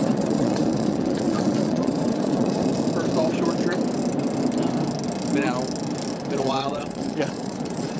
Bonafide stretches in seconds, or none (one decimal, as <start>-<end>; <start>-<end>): 2.7-6.4